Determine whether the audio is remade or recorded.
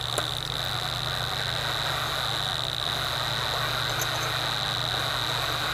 recorded